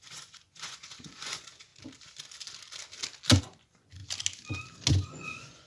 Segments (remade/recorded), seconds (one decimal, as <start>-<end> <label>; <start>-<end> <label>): 0.0-1.7 remade; 1.7-3.4 recorded; 3.4-4.0 remade; 4.0-4.9 recorded; 4.9-5.7 remade